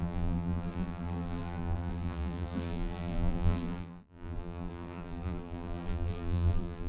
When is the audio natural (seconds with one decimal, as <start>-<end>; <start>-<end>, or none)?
none